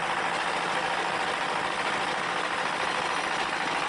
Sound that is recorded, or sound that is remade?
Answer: recorded